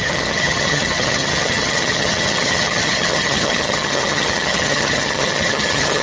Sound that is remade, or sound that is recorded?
remade